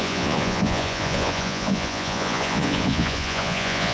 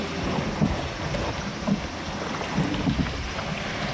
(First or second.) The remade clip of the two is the first